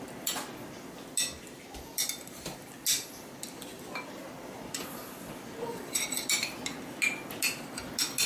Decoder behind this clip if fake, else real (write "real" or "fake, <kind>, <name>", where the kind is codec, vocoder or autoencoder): real